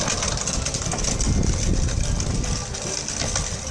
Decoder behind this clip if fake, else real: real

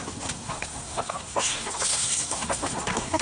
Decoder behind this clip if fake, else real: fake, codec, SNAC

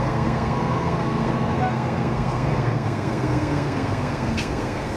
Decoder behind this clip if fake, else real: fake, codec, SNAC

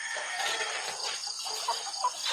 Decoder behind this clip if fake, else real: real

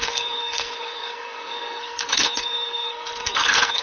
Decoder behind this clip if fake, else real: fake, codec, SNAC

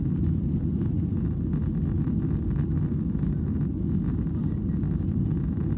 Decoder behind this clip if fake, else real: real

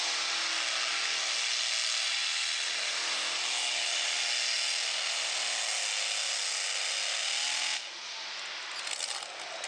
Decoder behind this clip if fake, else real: real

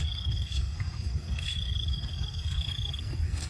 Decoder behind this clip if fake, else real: fake, codec, SNAC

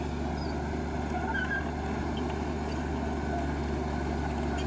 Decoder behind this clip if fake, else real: real